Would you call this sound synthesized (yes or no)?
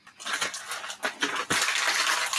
no